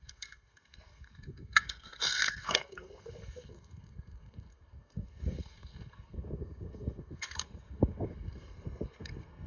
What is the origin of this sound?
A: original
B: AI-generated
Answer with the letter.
B